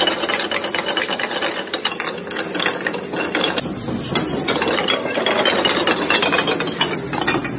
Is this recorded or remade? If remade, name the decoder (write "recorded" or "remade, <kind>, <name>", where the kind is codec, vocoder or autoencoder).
recorded